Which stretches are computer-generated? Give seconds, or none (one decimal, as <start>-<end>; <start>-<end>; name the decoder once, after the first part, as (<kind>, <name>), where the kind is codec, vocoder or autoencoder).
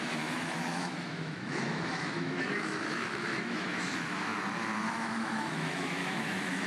0.0-4.3 (autoencoder, DAC-VAE); 4.9-6.7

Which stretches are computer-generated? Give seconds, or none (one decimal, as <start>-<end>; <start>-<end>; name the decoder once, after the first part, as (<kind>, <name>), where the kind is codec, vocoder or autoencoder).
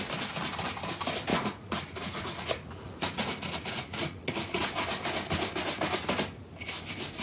1.3-4.6 (vocoder, Vocos)